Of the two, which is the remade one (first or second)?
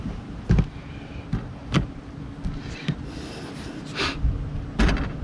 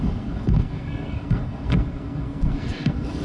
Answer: second